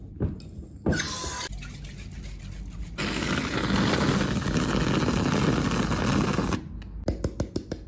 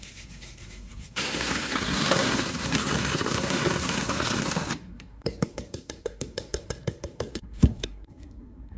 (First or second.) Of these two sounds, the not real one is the second